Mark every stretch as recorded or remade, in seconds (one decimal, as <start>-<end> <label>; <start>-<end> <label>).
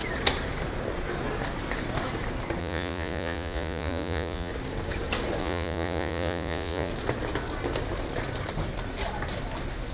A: 0.0-2.6 recorded; 2.6-4.5 remade; 4.5-5.4 recorded; 5.4-6.9 remade; 6.9-9.9 recorded